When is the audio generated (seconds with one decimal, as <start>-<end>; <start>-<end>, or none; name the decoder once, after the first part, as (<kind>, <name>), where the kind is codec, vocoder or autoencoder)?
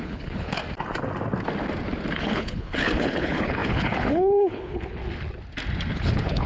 0.0-0.6 (codec, HILCodec); 2.2-5.0; 5.9-6.5